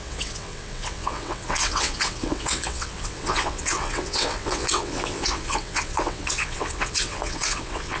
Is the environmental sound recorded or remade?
remade